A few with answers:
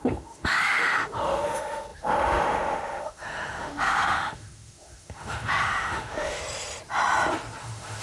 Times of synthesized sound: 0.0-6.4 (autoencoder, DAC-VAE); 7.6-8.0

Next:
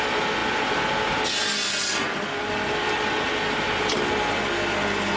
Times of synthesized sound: none

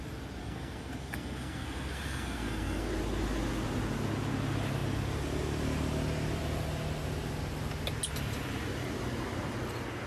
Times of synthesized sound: 0.4-2.9 (codec, SNAC)

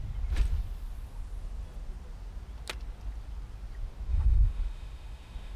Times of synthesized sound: 4.1-5.6 (autoencoder, DAC-VAE)